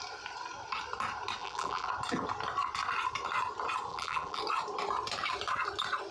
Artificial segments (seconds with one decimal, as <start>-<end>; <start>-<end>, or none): 1.4-1.9; 3.9-4.4